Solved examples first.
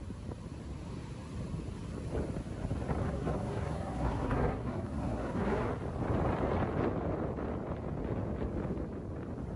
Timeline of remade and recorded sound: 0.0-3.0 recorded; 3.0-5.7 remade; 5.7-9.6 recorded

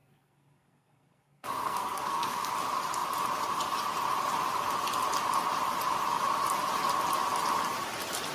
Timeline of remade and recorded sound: 0.0-2.5 remade; 2.5-8.3 recorded

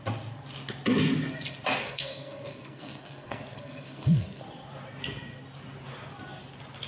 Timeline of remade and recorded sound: 0.0-1.8 recorded; 1.8-4.4 remade; 4.4-6.9 recorded

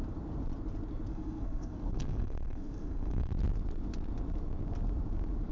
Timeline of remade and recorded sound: 0.0-1.1 recorded; 1.1-3.3 remade; 3.3-5.5 recorded

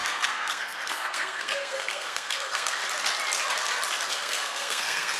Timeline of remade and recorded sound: 0.0-2.8 remade; 2.8-4.1 recorded; 4.1-5.2 remade

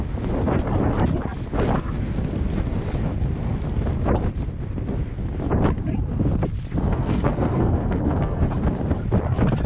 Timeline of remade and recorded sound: 0.0-6.9 recorded; 6.9-8.5 remade; 8.5-9.7 recorded

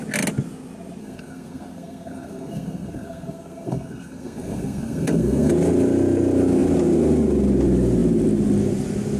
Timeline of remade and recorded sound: 0.0-1.0 recorded; 1.0-5.5 remade; 5.5-9.2 recorded